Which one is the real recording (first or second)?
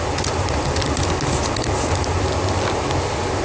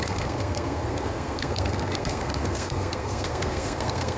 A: first